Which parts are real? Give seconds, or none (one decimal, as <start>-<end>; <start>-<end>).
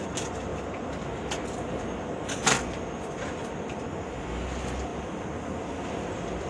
0.0-6.5